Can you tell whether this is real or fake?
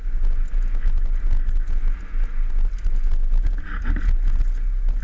real